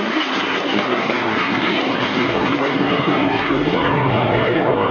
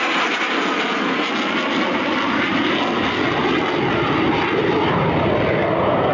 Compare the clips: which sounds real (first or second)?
second